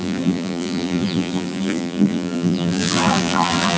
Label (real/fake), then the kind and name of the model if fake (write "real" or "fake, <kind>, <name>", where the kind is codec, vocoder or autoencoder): fake, vocoder, BigVGAN v2